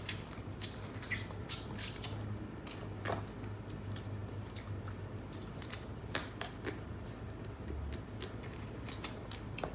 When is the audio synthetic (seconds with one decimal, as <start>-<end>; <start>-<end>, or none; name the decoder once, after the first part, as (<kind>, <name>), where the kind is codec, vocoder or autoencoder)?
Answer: none

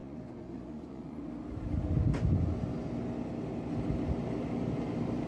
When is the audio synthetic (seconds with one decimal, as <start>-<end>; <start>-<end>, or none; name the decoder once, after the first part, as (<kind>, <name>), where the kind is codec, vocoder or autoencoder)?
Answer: 0.0-1.3 (vocoder, Vocos)

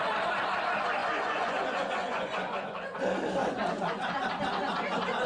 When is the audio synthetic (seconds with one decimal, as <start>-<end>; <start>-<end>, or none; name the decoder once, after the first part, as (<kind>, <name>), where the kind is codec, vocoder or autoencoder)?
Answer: 1.0-3.0 (vocoder, Vocos); 3.4-4.1

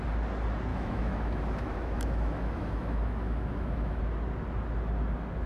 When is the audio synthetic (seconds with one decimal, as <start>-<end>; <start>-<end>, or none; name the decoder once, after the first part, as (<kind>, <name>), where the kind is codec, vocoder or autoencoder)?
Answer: 0.7-4.0 (autoencoder, DAC-VAE)

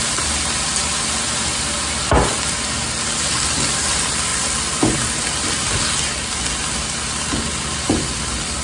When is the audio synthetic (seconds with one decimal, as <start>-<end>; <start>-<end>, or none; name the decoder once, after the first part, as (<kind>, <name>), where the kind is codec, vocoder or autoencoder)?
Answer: none

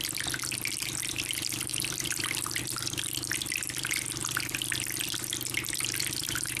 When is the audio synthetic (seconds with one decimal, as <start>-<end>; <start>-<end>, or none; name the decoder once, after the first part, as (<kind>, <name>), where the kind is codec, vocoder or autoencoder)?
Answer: 1.7-2.6 (vocoder, BigVGAN v2); 4.2-4.7

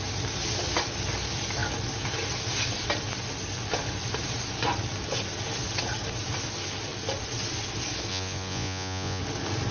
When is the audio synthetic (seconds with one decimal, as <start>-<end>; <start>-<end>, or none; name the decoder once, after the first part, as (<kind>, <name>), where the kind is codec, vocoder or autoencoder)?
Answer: 8.1-9.2 (vocoder, Vocos)